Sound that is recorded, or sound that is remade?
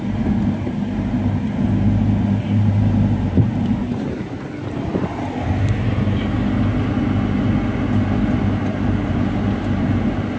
recorded